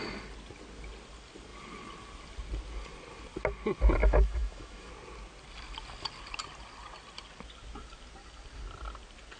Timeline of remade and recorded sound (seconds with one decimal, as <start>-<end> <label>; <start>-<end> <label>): 0.0-4.0 recorded; 4.0-4.9 remade; 4.9-9.4 recorded